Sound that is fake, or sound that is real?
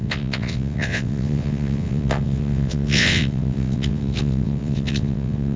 fake